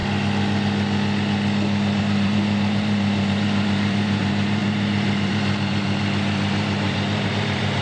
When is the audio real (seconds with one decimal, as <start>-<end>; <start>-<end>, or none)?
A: 0.0-2.0

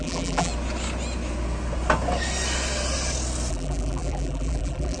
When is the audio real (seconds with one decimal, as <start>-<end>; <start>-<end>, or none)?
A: 0.5-3.5

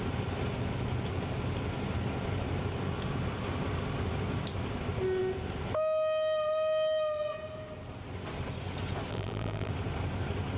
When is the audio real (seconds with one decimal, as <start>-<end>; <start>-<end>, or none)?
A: 0.0-9.1; 9.7-10.6

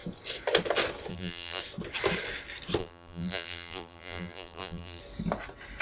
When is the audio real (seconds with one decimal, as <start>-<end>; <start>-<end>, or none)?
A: 0.0-1.1; 1.6-2.8; 5.0-5.8

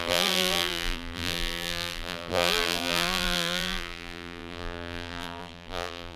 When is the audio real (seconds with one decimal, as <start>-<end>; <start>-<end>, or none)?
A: none

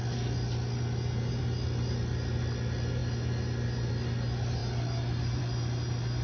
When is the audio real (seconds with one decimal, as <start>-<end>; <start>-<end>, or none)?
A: 0.0-6.2